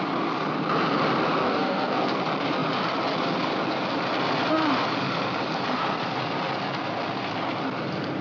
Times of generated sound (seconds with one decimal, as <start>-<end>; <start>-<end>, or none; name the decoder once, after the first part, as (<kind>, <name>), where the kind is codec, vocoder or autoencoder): 1.4-2.2 (codec, SNAC)